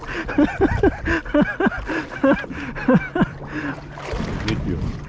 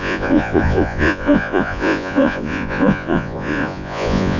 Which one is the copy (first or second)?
second